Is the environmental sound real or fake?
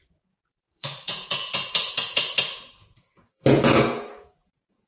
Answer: fake